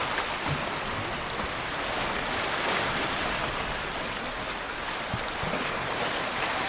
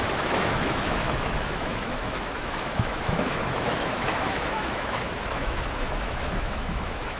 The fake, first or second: second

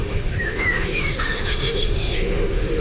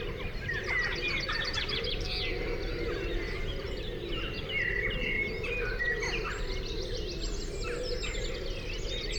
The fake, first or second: first